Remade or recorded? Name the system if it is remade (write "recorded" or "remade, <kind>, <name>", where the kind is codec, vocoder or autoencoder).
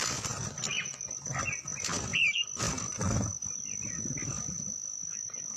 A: remade, vocoder, BigVGAN v2